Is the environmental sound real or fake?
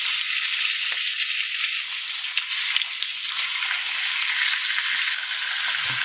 real